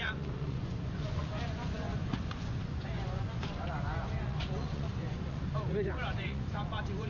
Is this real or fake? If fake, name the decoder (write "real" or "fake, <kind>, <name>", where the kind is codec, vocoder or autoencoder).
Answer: fake, vocoder, Vocos